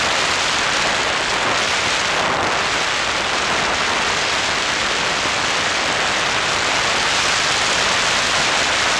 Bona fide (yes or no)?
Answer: yes